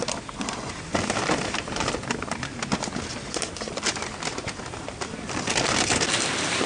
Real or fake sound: real